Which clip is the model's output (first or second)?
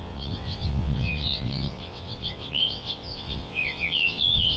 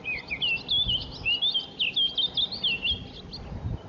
first